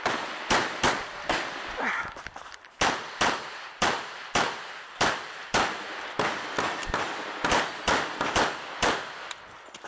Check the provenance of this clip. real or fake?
real